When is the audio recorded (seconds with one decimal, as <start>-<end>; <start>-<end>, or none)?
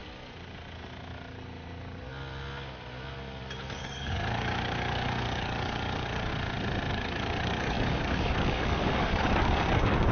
0.0-3.8; 6.3-6.9